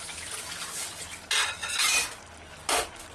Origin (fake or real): real